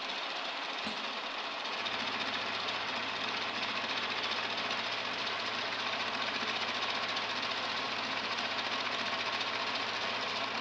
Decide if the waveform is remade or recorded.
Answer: recorded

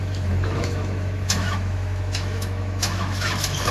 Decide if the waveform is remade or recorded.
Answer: remade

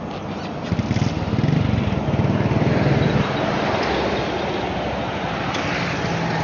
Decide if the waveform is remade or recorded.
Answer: recorded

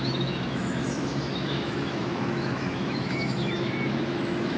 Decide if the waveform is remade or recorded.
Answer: remade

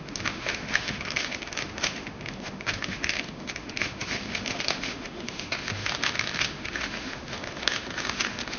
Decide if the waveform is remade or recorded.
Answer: remade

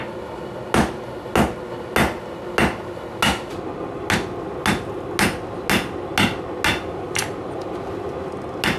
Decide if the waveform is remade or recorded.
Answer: recorded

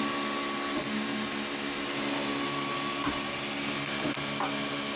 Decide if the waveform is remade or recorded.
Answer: recorded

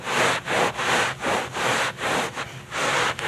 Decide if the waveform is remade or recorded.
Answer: recorded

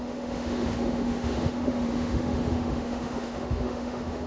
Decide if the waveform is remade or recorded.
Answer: remade